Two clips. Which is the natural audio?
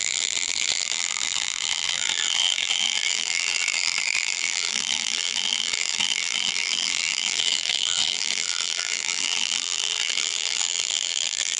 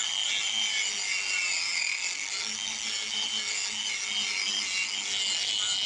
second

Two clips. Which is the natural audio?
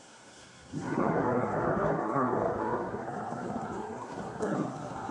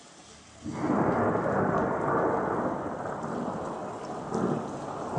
second